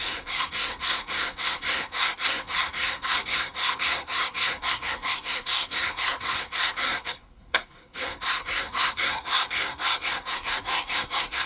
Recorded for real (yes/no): no